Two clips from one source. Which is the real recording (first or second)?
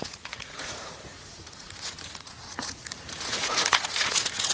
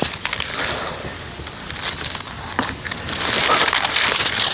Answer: second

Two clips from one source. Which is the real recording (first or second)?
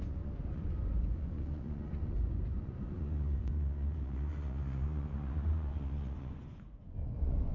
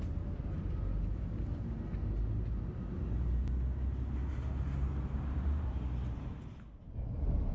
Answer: second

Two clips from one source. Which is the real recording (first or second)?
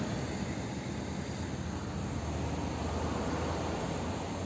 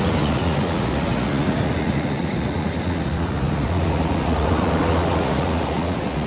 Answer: first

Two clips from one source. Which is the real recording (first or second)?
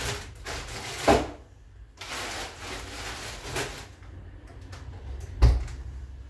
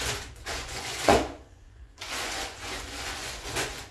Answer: first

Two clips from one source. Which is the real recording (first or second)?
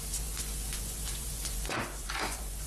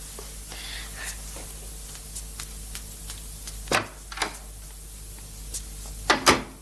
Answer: second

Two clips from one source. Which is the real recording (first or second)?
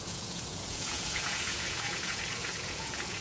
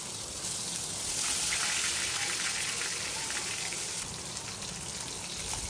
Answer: second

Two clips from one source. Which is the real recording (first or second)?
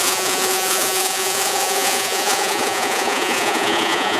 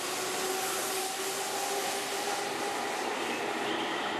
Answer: second